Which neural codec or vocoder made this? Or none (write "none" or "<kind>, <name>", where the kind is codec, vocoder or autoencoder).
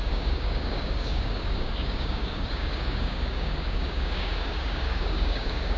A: codec, DAC